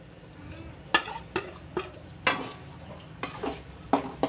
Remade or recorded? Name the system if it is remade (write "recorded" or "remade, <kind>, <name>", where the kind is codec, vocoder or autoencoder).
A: recorded